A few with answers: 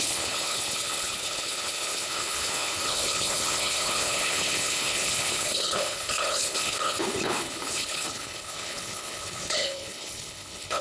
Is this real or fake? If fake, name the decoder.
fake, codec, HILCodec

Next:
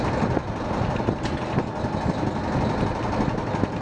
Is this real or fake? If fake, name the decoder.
real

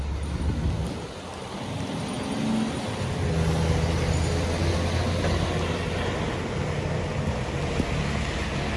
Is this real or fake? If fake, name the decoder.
real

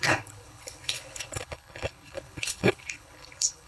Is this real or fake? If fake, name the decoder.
fake, codec, HILCodec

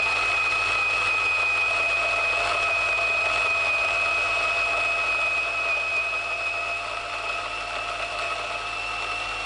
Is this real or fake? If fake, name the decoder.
real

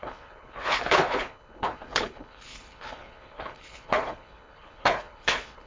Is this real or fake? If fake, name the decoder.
fake, codec, HILCodec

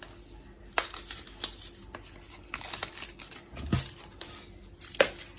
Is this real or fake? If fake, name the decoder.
real